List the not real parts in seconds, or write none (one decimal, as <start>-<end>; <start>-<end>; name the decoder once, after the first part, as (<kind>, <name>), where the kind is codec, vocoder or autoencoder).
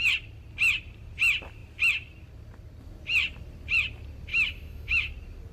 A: 4.3-5.1 (autoencoder, DAC-VAE)